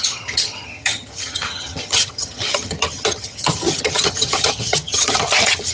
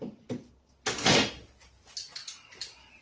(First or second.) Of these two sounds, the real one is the second